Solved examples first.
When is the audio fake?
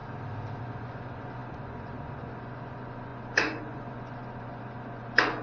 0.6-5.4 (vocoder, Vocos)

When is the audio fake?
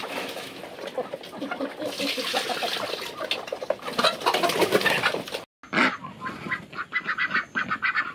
0.0-0.6 (autoencoder, DAC-VAE)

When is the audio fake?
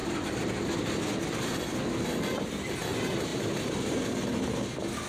3.3-4.1 (vocoder, BigVGAN v2)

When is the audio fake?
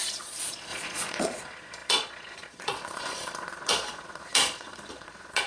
0.0-5.5 (vocoder, Vocos)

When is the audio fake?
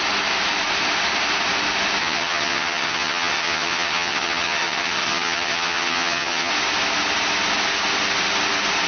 2.0-6.5 (vocoder, HiFi-GAN)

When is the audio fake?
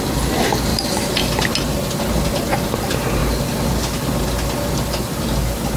0.7-1.3 (vocoder, BigVGAN v2)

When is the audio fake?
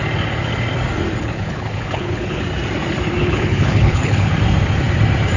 1.2-2.4 (codec, HILCodec); 3.2-4.3